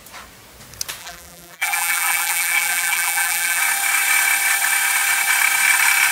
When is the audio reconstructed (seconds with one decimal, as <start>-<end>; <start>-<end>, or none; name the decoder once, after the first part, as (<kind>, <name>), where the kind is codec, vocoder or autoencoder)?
1.0-3.6 (vocoder, BigVGAN v2)